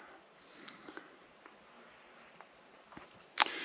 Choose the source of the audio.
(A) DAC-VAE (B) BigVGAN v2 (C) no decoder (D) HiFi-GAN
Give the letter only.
C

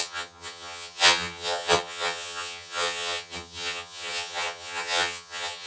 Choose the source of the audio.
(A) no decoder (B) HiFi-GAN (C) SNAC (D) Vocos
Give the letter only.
B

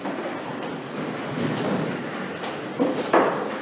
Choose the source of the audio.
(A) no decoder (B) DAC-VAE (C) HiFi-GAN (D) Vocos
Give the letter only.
A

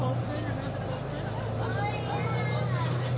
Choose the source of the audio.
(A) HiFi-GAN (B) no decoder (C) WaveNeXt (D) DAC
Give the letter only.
B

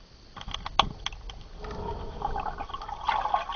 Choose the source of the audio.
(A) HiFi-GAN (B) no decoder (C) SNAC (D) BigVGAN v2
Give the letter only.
B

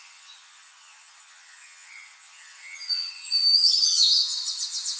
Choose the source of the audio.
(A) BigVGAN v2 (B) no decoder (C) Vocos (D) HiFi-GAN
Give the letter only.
D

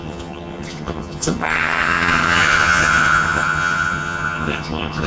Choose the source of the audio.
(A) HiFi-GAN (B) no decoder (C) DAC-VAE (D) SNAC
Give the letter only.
A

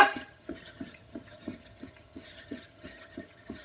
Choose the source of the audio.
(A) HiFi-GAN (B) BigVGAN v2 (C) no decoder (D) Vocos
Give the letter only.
A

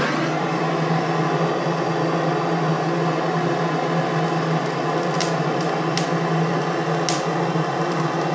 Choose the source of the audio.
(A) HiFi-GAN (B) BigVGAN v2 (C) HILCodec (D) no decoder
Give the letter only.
D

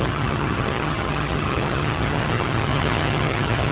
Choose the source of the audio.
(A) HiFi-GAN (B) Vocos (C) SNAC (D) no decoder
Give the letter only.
A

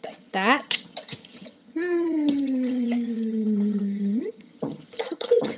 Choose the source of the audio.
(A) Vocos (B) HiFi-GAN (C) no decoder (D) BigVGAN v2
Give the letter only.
B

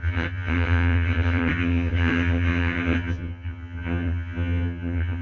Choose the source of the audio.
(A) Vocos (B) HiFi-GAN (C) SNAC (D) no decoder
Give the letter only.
B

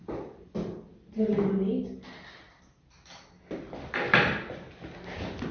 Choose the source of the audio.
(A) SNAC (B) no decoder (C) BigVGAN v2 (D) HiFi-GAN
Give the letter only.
B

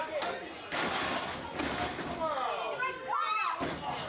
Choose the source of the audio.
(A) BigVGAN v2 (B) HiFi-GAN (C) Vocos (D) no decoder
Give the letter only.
D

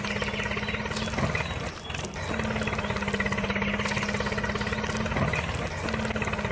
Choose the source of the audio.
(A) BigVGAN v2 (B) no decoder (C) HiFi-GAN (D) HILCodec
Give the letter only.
B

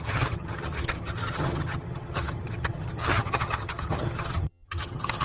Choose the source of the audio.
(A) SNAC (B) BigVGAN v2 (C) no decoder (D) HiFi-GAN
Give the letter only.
D